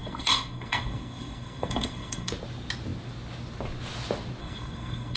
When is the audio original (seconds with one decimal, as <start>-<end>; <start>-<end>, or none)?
2.3-4.4